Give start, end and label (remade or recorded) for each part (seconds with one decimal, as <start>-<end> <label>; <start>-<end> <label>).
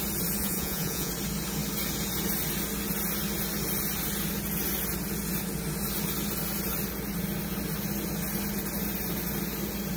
0.0-0.4 recorded; 0.4-1.1 remade; 1.1-10.0 recorded